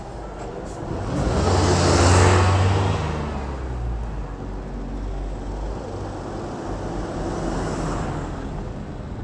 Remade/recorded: recorded